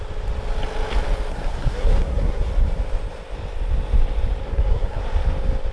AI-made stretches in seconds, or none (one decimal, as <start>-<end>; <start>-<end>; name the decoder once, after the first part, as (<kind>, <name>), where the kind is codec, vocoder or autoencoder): 1.3-2.5 (codec, SNAC); 4.4-5.0